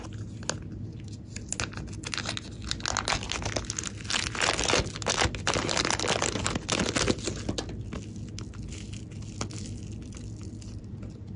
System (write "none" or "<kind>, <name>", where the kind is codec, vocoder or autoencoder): none